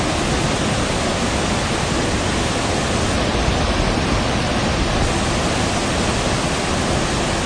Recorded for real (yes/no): yes